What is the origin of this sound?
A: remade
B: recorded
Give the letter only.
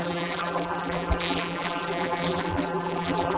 A